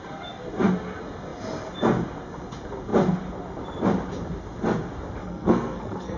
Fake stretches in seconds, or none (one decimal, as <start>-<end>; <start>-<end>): 5.2-6.2